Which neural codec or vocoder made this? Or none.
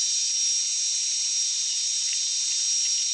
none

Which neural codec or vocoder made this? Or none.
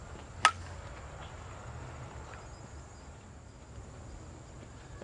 none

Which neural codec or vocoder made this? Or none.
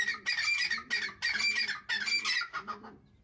none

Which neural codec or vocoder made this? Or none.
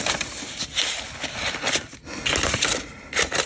none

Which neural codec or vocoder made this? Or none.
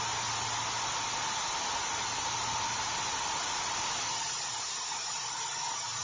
none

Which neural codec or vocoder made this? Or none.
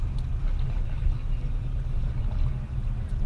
none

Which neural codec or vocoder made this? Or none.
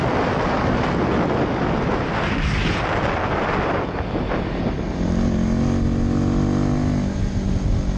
none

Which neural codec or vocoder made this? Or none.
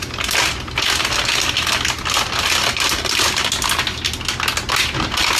none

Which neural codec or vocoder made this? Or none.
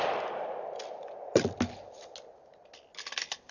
none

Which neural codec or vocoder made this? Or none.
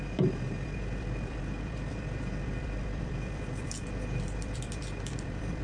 vocoder, BigVGAN v2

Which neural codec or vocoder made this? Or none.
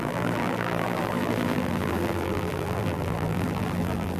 vocoder, BigVGAN v2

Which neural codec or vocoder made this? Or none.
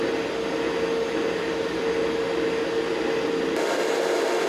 none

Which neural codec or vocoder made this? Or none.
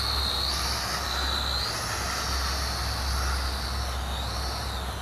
none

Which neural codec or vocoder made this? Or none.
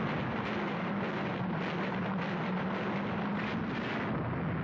none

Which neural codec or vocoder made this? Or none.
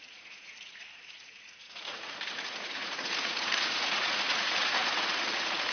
vocoder, Vocos